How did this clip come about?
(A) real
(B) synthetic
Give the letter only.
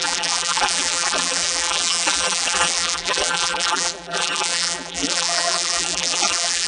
B